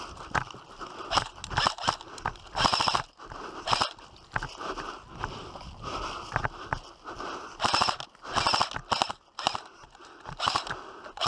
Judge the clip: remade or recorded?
recorded